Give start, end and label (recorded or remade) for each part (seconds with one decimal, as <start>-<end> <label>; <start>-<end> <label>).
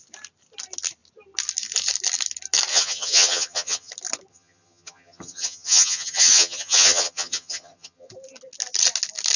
0.0-2.7 recorded; 2.7-3.9 remade; 3.9-4.3 recorded; 4.3-8.1 remade; 8.1-9.4 recorded